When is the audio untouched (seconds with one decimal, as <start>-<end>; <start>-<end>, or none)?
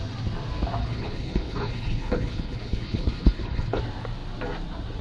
0.0-0.8; 3.8-5.0